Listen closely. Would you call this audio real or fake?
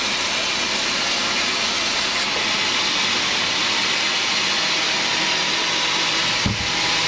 real